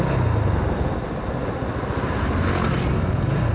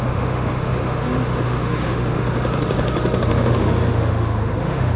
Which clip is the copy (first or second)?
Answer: second